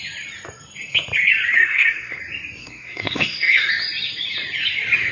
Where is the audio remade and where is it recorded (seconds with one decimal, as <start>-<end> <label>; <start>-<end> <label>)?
0.0-1.6 recorded; 1.6-2.2 remade; 2.2-2.6 recorded; 2.6-3.7 remade; 3.7-5.1 recorded